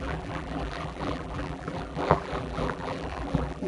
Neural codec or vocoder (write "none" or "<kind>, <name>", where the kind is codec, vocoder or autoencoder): vocoder, BigVGAN v2